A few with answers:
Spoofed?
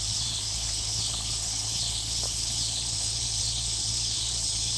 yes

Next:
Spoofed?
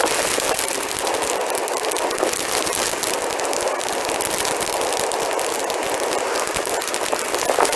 no